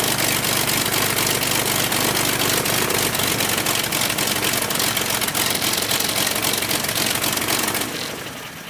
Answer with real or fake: real